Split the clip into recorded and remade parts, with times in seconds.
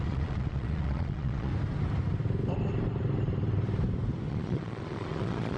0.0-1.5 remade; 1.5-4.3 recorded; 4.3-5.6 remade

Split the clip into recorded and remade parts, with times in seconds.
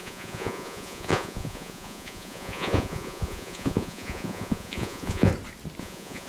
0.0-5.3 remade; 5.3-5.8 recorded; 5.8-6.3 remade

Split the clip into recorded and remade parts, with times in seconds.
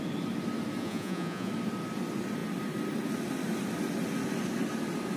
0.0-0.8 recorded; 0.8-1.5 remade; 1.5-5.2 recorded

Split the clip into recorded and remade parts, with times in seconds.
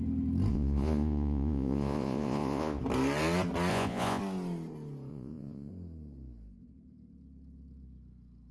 0.0-0.5 recorded; 0.5-2.8 remade; 2.8-3.7 recorded; 3.7-4.2 remade; 4.2-5.1 recorded; 5.1-5.7 remade; 5.7-8.5 recorded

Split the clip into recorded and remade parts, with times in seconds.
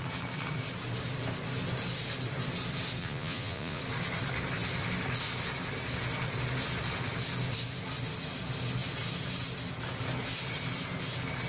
0.0-3.0 recorded; 3.0-3.8 remade; 3.8-11.5 recorded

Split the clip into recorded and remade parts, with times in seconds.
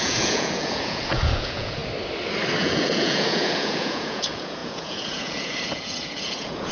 0.0-1.8 remade; 1.8-2.6 recorded; 2.6-6.7 remade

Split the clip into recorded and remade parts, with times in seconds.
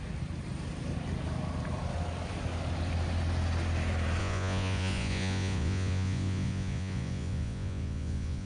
0.0-4.2 recorded; 4.2-8.5 remade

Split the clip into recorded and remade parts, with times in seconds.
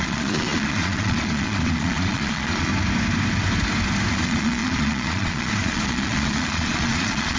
0.0-2.7 remade; 2.7-4.1 recorded; 4.1-7.4 remade